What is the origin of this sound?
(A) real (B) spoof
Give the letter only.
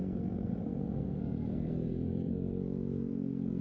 B